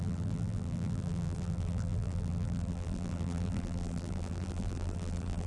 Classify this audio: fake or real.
fake